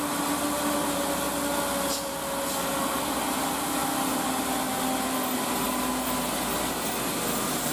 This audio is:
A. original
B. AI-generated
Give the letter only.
A